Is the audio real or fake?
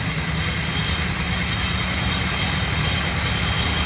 real